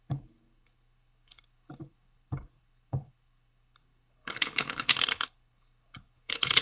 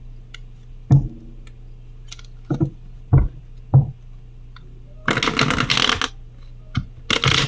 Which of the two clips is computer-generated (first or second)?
first